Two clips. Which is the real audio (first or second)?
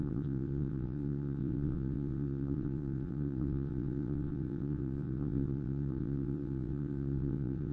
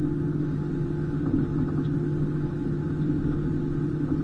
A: second